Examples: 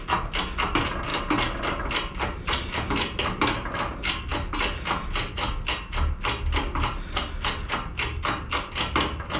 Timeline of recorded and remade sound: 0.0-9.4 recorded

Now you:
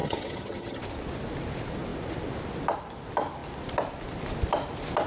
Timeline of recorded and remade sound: 0.0-0.8 remade; 0.8-5.1 recorded

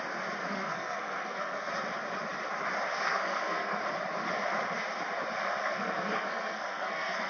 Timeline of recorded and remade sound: 0.0-0.4 recorded; 0.4-1.7 remade; 1.7-2.9 recorded; 2.9-3.8 remade; 3.8-5.6 recorded; 5.6-7.3 remade

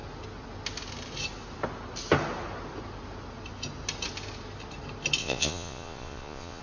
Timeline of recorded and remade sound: 0.0-5.2 recorded; 5.2-6.6 remade